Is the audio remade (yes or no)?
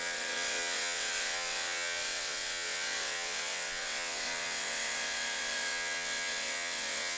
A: yes